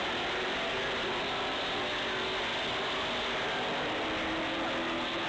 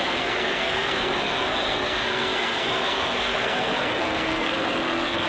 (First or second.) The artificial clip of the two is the second